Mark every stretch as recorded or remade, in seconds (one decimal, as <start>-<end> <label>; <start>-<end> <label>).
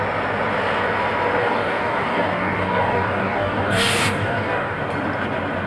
0.0-1.4 recorded; 1.4-4.8 remade; 4.8-5.7 recorded